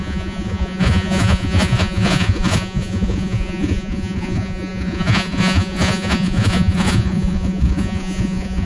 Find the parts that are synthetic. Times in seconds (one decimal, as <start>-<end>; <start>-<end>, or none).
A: 0.0-8.7

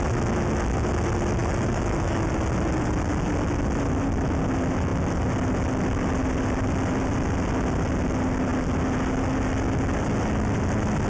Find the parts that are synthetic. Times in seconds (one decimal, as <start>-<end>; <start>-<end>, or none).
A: 1.4-2.3

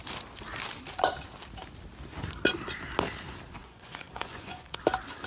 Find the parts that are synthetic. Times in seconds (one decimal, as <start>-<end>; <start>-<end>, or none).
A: 3.6-4.8

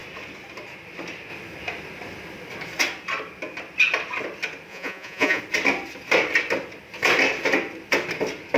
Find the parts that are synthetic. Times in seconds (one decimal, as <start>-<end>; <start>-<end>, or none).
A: 4.7-5.4

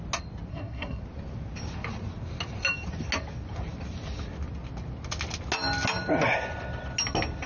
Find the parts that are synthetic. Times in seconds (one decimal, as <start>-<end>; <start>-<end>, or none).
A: 0.5-1.0

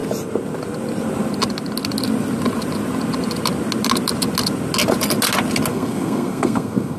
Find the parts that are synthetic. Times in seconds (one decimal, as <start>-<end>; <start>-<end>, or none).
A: 5.7-7.0

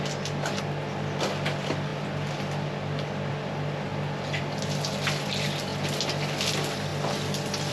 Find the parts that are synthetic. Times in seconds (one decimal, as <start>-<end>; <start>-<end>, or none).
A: none